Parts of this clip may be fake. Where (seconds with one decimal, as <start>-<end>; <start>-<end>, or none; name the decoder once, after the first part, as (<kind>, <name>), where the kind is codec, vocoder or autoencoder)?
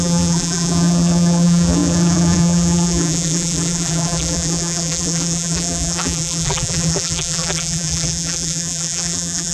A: 0.0-9.5 (vocoder, BigVGAN v2)